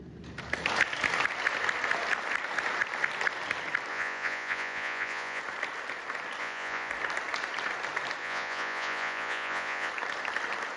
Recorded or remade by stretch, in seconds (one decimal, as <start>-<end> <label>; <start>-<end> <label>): 0.0-3.9 recorded; 3.9-5.4 remade; 5.4-6.4 recorded; 6.4-6.9 remade; 6.9-8.2 recorded; 8.2-9.9 remade; 9.9-10.8 recorded